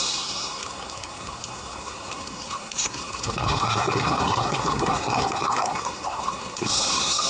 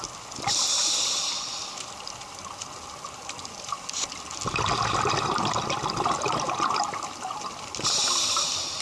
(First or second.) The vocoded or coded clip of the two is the first